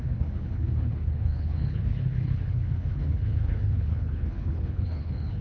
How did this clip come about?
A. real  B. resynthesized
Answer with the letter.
B